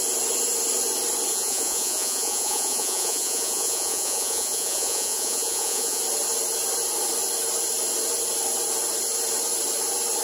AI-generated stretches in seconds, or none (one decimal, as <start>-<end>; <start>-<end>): 1.3-6.0